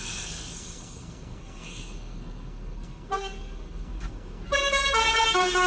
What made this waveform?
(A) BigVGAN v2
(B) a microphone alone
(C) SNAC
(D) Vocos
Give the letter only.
C